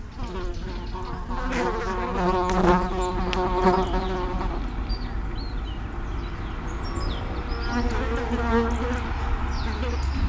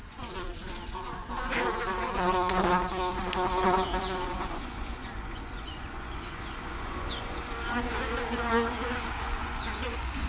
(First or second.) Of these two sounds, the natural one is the first